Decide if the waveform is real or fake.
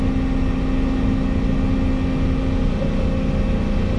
real